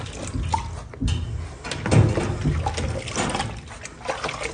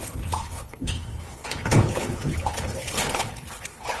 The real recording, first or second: first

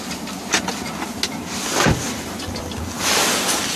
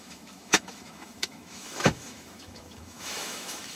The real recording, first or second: first